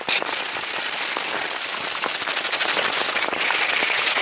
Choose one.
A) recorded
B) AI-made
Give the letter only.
A